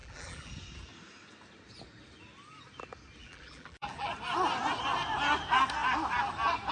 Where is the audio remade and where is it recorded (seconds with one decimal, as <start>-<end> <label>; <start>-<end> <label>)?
0.0-0.5 remade; 0.5-3.2 recorded; 3.2-4.1 remade; 4.1-6.7 recorded